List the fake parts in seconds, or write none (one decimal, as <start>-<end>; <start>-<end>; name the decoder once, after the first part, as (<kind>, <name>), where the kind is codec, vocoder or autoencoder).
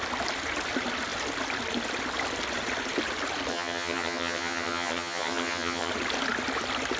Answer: 3.5-5.9 (vocoder, HiFi-GAN)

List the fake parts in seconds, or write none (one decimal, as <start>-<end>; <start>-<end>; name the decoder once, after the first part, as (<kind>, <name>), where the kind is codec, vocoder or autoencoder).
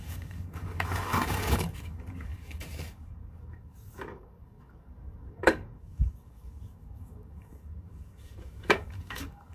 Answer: 0.0-9.5 (codec, DAC)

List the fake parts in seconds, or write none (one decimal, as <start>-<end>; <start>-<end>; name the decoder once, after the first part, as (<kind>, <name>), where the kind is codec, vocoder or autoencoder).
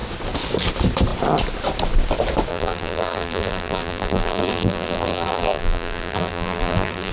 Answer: 2.5-7.1 (vocoder, BigVGAN v2)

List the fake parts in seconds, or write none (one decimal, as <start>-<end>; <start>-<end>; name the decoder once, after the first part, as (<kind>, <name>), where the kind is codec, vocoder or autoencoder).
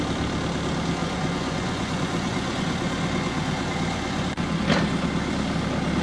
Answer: 1.0-4.6 (vocoder, Vocos)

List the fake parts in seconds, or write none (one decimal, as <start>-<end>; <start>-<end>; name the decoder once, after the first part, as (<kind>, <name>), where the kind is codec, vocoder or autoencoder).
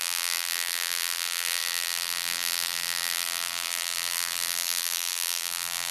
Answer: 0.0-5.9 (vocoder, BigVGAN v2)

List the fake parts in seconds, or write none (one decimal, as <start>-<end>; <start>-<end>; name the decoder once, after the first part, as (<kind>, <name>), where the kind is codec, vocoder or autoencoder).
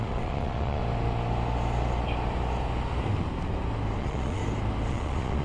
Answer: 0.0-0.8 (vocoder, Vocos); 4.0-4.4; 4.9-5.4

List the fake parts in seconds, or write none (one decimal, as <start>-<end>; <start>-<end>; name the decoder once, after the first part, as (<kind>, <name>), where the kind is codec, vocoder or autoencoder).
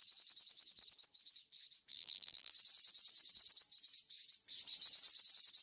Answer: 1.9-2.5 (vocoder, BigVGAN v2)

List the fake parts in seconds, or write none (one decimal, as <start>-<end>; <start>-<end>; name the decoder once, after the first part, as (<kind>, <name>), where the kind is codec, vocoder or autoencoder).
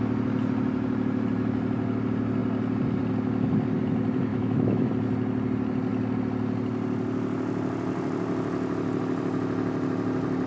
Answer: 4.3-4.9 (autoencoder, DAC-VAE)